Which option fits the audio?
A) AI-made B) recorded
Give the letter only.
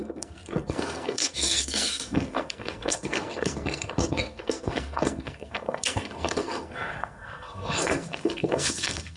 A